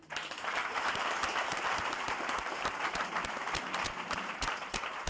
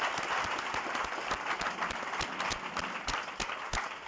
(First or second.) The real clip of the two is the second